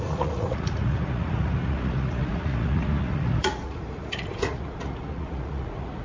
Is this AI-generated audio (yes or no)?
yes